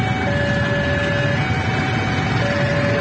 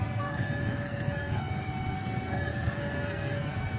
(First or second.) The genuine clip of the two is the first